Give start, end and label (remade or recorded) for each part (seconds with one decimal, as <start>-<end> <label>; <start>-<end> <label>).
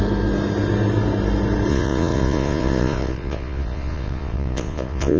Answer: 0.0-1.7 recorded; 1.7-5.2 remade